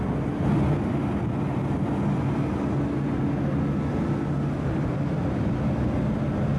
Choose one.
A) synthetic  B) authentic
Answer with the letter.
B